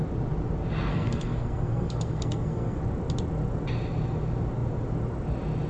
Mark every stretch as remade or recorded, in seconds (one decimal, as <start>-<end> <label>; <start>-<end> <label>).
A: 0.0-0.9 recorded; 0.9-2.8 remade; 2.8-5.7 recorded